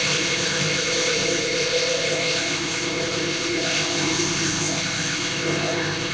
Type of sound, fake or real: fake